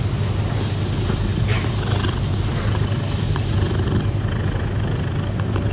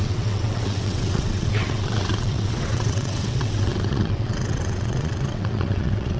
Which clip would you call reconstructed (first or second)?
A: second